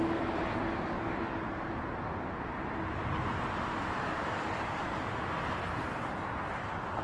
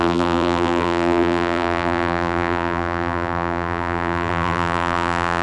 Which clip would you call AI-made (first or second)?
second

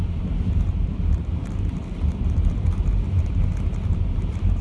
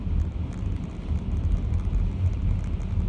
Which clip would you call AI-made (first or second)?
first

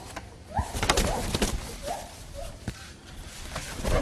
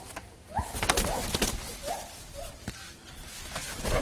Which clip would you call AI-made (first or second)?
first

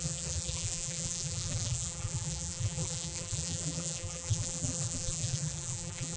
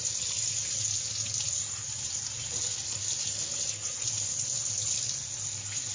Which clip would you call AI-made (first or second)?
first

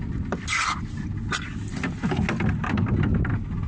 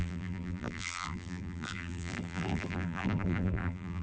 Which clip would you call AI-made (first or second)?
second